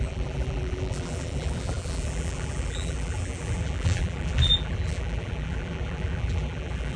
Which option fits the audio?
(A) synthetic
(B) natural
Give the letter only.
A